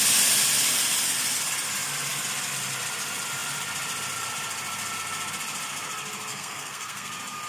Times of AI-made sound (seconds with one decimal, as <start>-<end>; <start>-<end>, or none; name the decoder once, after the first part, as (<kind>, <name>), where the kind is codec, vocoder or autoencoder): 6.3-7.1 (codec, SNAC)